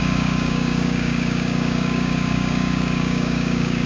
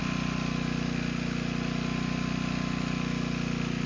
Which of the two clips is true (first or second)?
second